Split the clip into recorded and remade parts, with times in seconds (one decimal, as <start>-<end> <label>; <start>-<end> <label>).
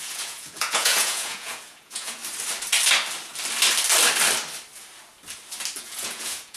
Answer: 0.0-2.2 remade; 2.2-5.8 recorded; 5.8-6.6 remade